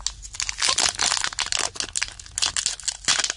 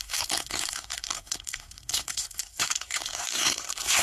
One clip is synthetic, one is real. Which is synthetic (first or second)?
second